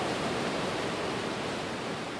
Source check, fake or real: fake